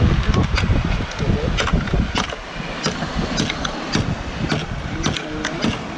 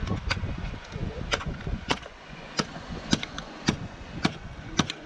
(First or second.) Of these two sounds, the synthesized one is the second